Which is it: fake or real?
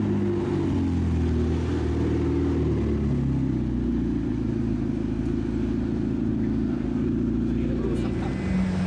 real